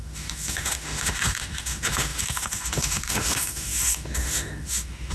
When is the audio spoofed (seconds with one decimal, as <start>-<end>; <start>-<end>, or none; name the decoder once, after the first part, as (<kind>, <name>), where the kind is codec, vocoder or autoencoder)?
0.0-5.1 (autoencoder, DAC-VAE)